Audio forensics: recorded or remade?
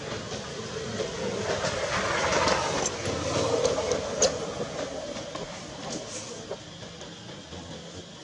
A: recorded